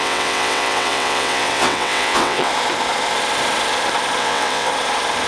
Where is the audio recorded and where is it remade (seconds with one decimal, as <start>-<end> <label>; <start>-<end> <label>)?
0.0-2.5 remade; 2.5-4.2 recorded; 4.2-4.7 remade; 4.7-5.3 recorded